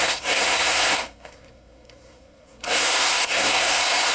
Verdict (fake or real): fake